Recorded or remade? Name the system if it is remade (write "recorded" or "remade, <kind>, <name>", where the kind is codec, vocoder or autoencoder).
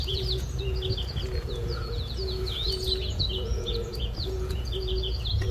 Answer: remade, vocoder, Vocos